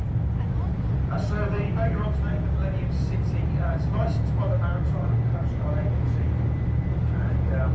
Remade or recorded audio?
recorded